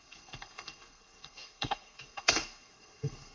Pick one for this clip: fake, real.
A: fake